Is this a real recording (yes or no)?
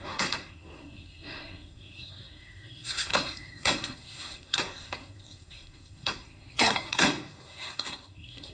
no